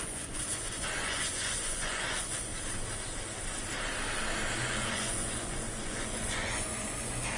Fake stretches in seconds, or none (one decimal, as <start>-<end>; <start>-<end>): 0.0-2.5; 4.6-7.4